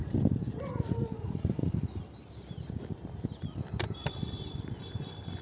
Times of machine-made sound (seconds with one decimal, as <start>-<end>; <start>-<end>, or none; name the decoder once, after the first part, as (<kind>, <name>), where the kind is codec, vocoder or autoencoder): 0.9-1.6 (vocoder, BigVGAN v2); 4.8-5.4